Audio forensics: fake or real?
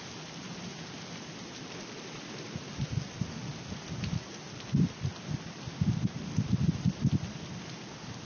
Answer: real